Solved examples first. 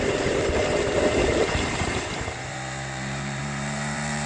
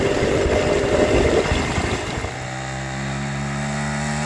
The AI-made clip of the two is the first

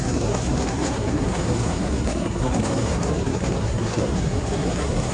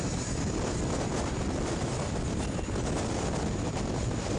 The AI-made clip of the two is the first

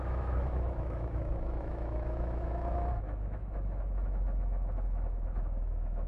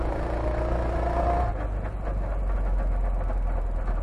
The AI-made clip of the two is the first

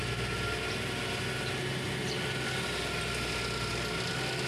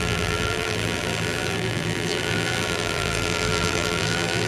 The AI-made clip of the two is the second